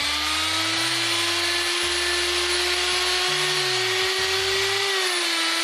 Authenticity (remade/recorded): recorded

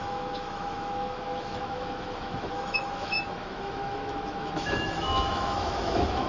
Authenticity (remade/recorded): remade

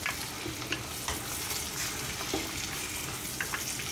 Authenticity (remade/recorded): recorded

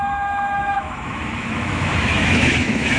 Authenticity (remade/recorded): remade